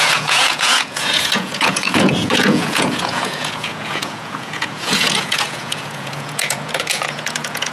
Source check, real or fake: fake